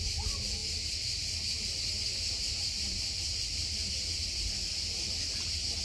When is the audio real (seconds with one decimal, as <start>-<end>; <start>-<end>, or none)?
0.0-5.8